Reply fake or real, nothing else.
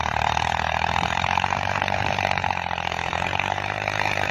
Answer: fake